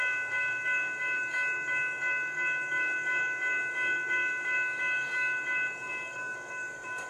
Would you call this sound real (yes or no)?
no